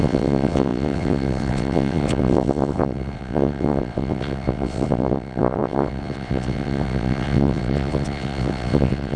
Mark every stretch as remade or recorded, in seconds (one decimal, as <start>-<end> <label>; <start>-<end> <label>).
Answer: 0.0-9.2 remade